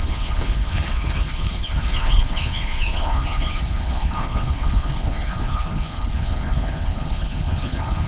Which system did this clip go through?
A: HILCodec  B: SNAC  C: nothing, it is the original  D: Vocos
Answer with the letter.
A